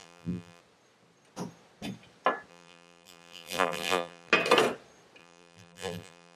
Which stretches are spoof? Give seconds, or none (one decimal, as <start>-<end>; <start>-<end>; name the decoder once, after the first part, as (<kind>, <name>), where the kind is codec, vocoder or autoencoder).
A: 0.0-0.6 (vocoder, BigVGAN v2); 2.5-4.3; 5.2-6.4